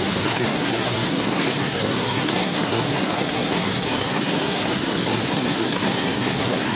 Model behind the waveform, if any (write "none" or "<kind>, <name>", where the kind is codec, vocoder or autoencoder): codec, SNAC